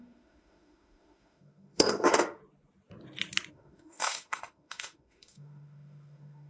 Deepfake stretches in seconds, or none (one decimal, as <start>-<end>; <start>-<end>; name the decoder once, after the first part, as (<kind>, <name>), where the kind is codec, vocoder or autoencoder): 0.0-2.4 (autoencoder, DAC-VAE); 3.5-6.5